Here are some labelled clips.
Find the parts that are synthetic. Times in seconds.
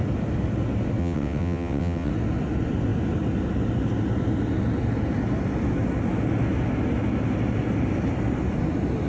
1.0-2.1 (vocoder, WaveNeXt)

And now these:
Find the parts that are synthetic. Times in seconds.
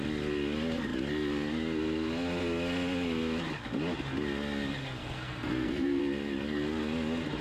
5.0-6.0 (codec, SNAC)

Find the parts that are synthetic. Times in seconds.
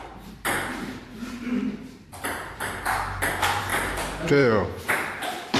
0.0-5.6 (vocoder, BigVGAN v2)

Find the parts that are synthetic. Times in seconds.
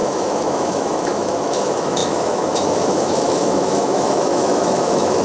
0.0-5.2 (autoencoder, DAC-VAE)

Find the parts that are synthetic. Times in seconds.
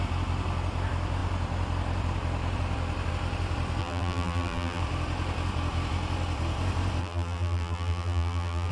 3.8-4.8 (vocoder, BigVGAN v2); 7.0-8.7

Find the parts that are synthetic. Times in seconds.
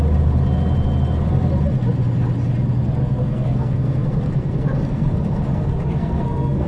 3.0-6.7 (codec, SNAC)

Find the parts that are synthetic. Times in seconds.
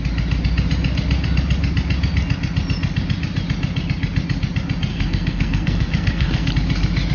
4.9-6.5 (codec, SNAC)